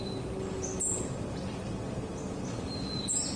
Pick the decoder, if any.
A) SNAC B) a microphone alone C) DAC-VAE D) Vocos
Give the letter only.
B